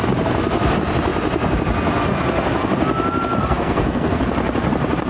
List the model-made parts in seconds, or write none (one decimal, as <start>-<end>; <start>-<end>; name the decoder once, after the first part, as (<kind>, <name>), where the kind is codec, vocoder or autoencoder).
3.4-4.2 (codec, SNAC)